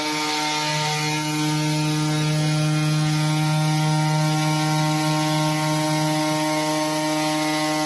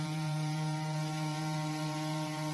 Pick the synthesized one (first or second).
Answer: second